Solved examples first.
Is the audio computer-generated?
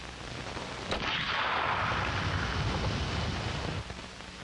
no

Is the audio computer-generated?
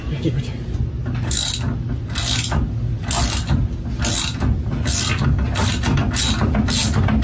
no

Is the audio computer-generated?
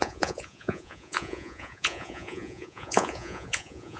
yes